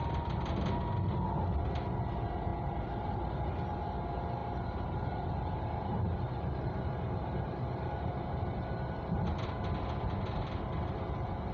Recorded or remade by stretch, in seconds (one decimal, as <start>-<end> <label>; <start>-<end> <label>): 0.0-4.4 recorded; 4.4-8.3 remade; 8.3-11.5 recorded